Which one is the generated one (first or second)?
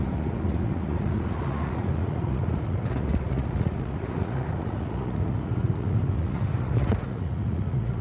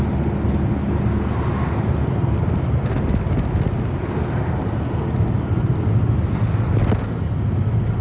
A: first